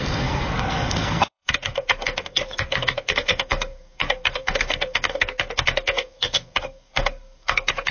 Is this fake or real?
fake